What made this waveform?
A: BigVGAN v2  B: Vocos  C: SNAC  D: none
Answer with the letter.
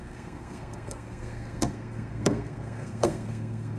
C